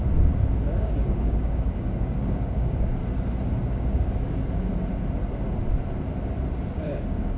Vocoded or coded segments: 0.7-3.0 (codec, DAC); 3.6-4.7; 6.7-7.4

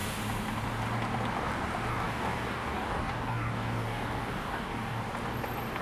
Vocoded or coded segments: 1.9-5.0 (codec, DAC)

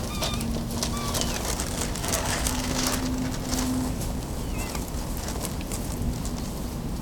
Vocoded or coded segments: 2.0-3.0 (codec, DAC)

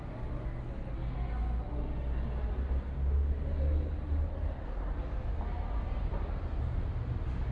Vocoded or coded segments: none

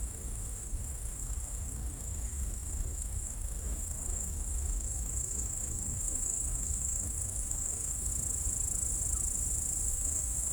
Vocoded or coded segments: 0.0-8.1 (codec, DAC); 9.9-10.5

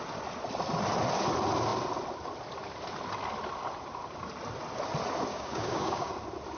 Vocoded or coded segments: 5.3-6.1 (codec, DAC)

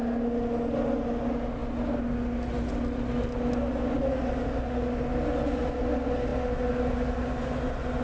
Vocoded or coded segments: none

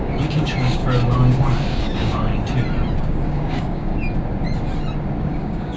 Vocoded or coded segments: 0.0-0.8 (codec, DAC); 1.8-2.3; 3.0-3.9; 5.2-5.8